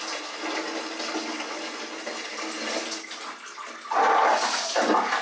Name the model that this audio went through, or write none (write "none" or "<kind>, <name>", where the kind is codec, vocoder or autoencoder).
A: none